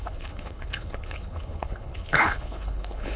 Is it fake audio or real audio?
fake